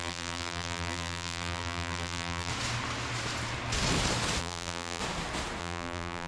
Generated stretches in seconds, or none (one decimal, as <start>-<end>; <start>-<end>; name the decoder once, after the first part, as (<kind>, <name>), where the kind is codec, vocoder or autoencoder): 0.0-2.5 (vocoder, BigVGAN v2); 4.4-5.0; 5.6-6.3